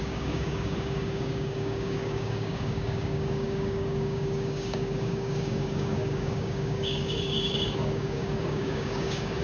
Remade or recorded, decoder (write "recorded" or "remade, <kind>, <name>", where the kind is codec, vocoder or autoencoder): remade, codec, DAC